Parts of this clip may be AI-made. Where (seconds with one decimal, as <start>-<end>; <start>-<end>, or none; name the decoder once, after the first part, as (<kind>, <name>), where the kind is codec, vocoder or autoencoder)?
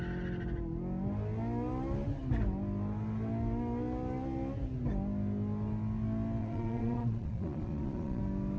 6.4-8.2 (vocoder, Vocos)